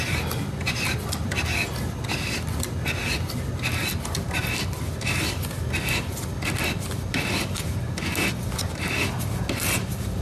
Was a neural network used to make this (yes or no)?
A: no